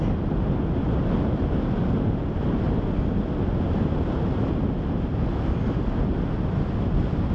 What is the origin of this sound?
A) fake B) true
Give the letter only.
B